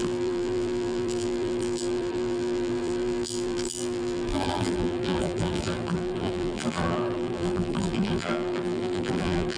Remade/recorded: remade